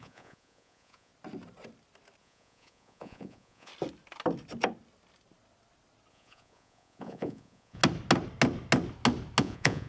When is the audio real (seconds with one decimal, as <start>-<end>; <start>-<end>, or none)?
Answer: 1.1-2.2; 3.7-6.1; 7.8-9.4